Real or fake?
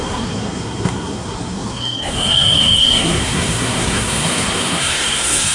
fake